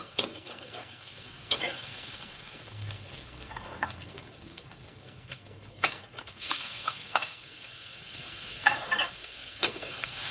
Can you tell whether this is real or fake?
fake